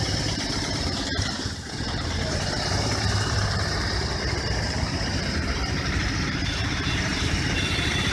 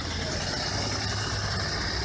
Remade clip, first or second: first